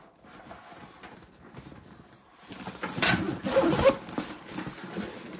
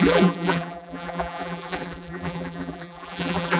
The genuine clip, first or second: first